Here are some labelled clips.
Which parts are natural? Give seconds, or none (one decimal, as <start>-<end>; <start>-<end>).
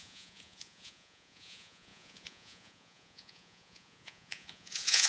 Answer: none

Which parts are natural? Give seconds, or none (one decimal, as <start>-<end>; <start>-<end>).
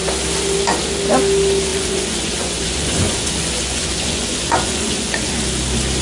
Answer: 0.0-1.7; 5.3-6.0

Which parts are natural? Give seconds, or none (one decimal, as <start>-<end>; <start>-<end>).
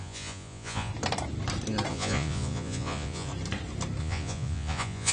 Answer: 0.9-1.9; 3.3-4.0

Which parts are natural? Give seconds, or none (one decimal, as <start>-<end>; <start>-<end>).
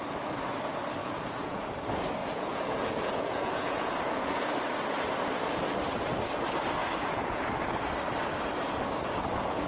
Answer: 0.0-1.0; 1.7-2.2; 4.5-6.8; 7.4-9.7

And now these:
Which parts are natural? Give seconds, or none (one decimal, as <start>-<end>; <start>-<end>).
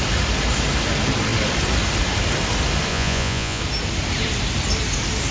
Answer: 0.0-2.9; 3.6-5.3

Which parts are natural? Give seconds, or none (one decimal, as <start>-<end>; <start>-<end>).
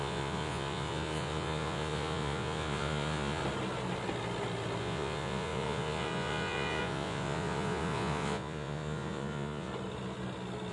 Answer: 3.4-4.8; 9.7-10.7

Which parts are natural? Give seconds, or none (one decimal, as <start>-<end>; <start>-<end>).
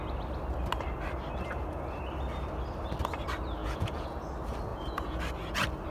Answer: 0.0-3.6; 4.3-4.7; 5.2-5.9